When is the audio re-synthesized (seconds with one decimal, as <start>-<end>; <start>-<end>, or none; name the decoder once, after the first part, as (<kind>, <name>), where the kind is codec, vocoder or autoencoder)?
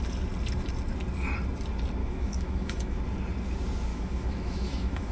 2.0-3.0 (autoencoder, DAC-VAE); 3.9-5.1